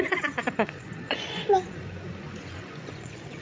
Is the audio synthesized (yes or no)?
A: yes